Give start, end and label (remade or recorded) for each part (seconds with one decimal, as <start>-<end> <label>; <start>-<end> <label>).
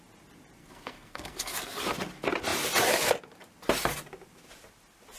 0.0-0.6 recorded; 0.6-1.8 remade; 1.8-5.2 recorded